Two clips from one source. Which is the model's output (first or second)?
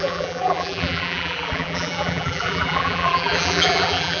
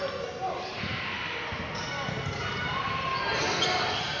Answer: first